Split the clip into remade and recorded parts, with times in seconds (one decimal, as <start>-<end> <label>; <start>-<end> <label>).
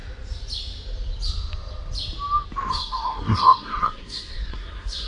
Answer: 0.0-2.7 recorded; 2.7-5.1 remade